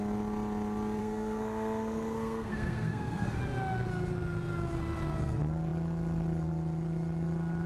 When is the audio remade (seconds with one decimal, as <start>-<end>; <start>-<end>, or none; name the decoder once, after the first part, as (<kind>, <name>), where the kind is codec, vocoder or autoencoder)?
1.0-3.4 (codec, SNAC)

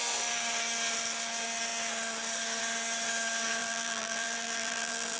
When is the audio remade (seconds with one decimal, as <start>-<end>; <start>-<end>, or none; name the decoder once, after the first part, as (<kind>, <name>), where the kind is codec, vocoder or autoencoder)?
3.6-5.2 (vocoder, BigVGAN v2)

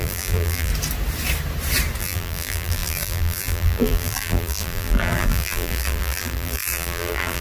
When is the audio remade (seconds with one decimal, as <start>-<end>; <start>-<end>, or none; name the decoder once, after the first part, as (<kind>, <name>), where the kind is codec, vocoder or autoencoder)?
0.0-0.7 (vocoder, BigVGAN v2); 2.0-7.4